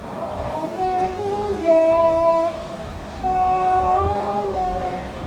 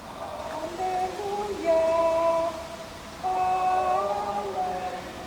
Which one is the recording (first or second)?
second